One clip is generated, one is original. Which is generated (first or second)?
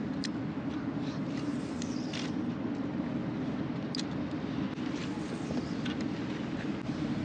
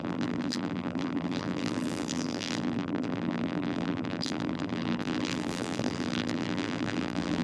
second